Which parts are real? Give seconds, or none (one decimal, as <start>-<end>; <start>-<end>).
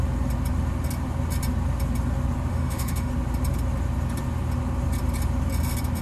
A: 0.0-2.5; 3.1-6.0